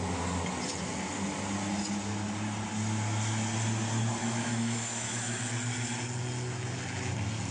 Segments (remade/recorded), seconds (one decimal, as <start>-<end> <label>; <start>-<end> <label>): 0.0-4.2 recorded; 4.2-5.4 remade; 5.4-7.5 recorded